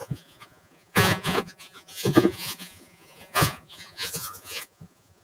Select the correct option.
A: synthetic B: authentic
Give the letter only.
A